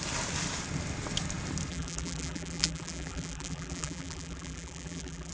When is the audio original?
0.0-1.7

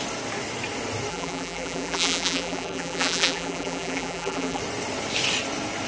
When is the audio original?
0.0-1.1; 4.6-5.9